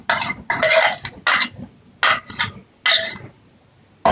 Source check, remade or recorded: recorded